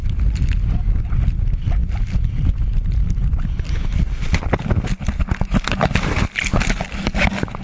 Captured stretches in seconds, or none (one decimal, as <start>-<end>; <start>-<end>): 1.3-7.6